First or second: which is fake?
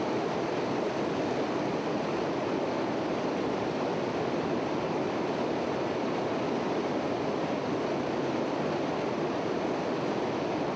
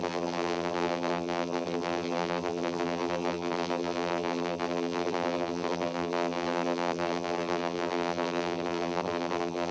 second